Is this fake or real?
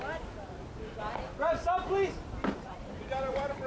real